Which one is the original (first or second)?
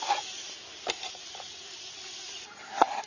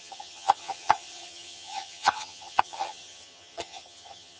first